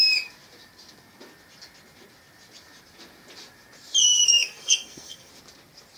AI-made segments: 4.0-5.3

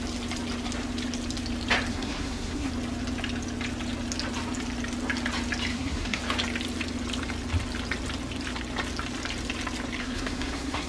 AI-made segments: 1.9-2.7; 5.7-6.2; 10.0-10.9

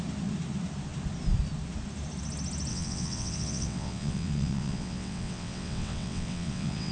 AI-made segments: 2.7-6.9